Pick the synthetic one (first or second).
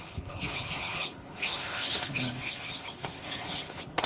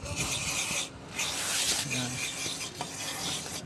first